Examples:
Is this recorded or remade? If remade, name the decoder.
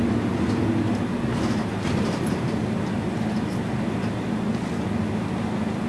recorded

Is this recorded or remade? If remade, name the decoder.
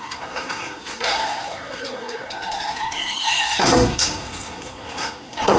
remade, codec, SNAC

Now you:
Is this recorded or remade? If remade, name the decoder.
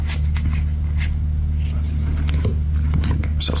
recorded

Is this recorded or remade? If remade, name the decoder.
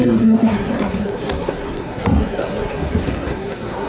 remade, codec, SNAC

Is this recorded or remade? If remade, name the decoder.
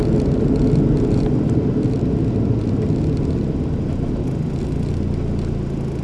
recorded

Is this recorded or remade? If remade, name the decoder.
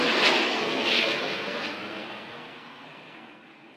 remade, codec, SNAC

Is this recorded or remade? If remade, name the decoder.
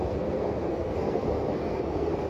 remade, codec, SNAC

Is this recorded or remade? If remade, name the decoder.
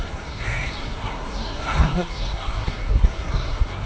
remade, codec, SNAC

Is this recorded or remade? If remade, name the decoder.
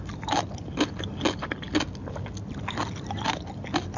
recorded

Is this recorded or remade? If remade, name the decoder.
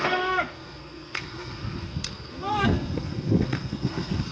remade, codec, SNAC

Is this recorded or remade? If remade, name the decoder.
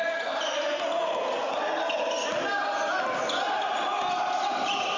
recorded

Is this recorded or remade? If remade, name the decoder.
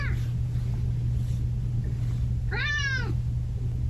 recorded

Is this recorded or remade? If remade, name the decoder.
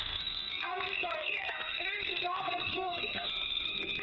remade, codec, SNAC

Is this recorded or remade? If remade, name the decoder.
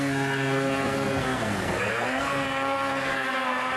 remade, codec, SNAC